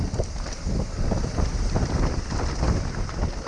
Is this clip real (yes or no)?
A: yes